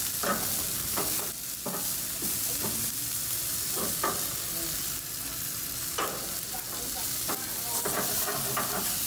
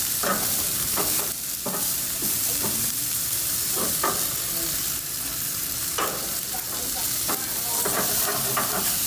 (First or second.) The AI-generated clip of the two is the second